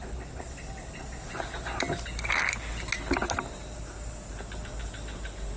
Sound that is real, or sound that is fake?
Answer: real